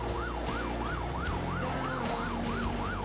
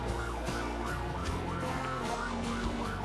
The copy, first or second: second